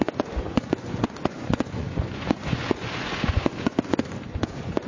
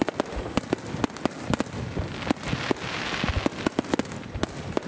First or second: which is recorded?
second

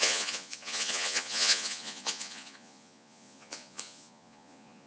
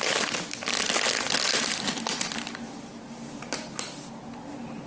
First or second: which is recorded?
second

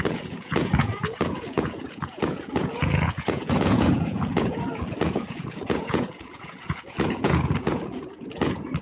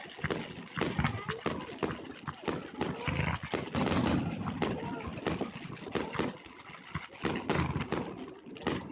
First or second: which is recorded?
second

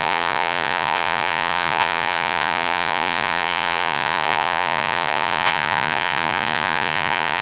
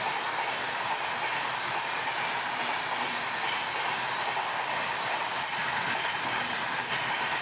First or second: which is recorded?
second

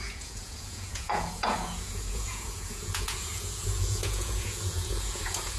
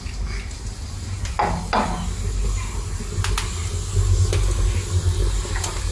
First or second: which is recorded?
second